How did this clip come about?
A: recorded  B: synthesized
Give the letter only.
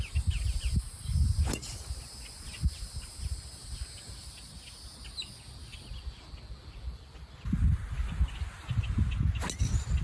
A